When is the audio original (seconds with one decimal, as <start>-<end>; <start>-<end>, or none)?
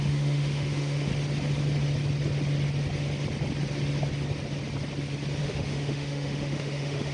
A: 1.1-5.4